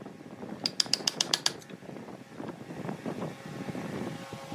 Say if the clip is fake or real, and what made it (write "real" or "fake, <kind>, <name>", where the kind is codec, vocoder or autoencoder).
real